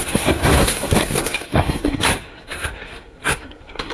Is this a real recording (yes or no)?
no